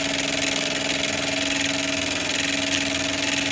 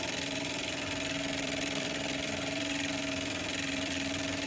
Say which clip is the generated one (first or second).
second